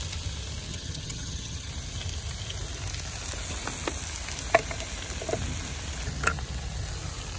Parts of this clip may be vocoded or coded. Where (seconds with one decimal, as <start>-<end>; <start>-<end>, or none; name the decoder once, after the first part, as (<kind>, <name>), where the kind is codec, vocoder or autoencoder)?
0.7-1.7 (vocoder, HiFi-GAN)